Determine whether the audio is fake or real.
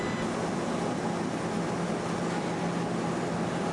real